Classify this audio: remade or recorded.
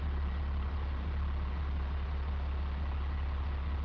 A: recorded